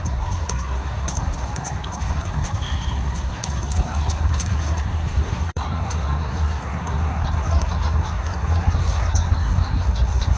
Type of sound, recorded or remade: remade